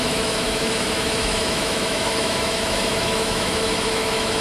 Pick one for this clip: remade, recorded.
remade